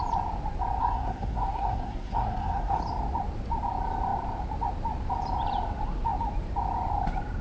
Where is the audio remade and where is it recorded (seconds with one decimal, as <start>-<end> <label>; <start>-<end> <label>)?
0.0-0.8 recorded; 0.8-2.8 remade; 2.8-7.4 recorded